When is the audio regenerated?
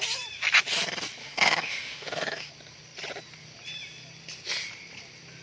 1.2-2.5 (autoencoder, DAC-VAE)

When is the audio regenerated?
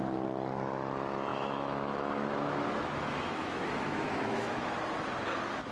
1.3-4.7 (autoencoder, DAC-VAE)